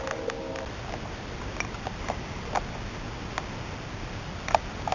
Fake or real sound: real